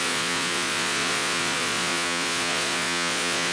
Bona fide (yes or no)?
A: no